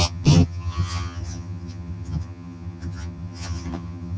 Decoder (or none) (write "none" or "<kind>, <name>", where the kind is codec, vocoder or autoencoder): vocoder, HiFi-GAN